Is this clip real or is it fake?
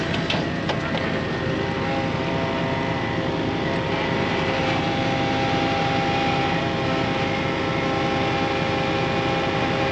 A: real